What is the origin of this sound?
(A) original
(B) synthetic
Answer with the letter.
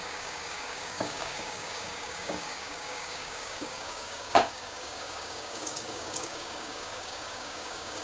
B